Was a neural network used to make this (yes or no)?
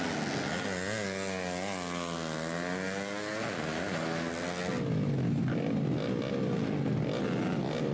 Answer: no